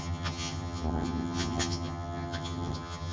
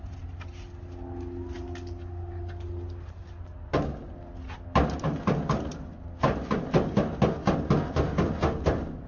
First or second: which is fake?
first